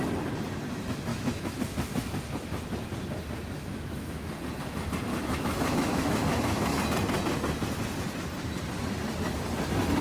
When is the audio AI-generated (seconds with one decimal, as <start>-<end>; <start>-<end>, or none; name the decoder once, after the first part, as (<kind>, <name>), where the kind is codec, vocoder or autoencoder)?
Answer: 1.1-1.6 (autoencoder, DAC-VAE); 3.7-4.3; 5.1-6.8